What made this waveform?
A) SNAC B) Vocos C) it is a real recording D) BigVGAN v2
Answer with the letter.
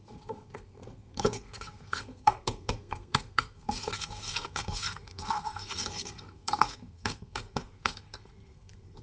A